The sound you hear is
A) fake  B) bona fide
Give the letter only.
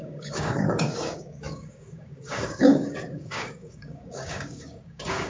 A